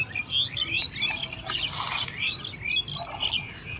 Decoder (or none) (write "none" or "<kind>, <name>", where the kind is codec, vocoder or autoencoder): none